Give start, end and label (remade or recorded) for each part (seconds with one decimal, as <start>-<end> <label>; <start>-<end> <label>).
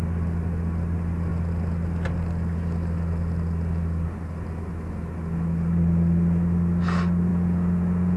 0.0-7.3 recorded; 7.3-8.2 remade